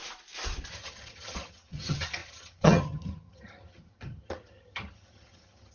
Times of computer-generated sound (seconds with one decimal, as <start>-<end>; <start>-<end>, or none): 0.7-5.7